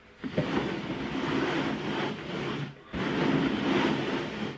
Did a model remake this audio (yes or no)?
no